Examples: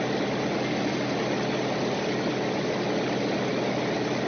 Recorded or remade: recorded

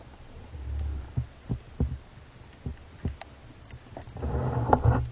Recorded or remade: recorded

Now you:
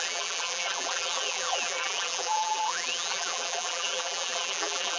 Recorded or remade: remade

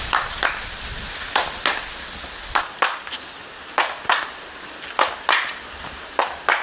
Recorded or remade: recorded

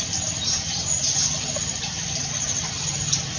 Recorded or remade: recorded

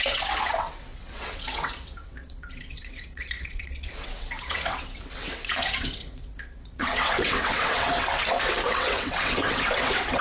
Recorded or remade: remade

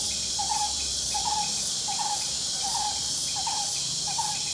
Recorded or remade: remade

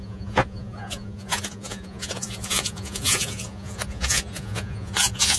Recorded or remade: remade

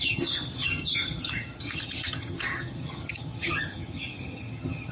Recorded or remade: remade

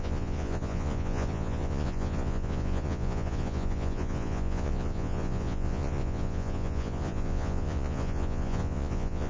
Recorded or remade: remade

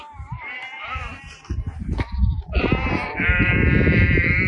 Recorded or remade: remade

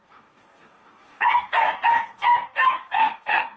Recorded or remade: remade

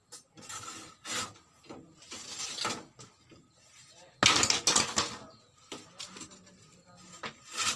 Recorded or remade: recorded